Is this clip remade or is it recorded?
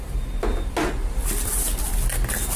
recorded